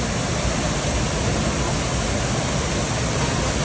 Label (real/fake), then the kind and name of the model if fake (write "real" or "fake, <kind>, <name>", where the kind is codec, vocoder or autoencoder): real